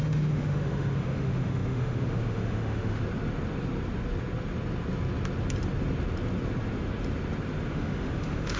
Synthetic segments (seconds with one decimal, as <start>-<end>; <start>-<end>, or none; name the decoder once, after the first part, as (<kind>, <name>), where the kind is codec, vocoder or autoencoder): 0.0-3.0 (autoencoder, DAC-VAE); 7.7-8.6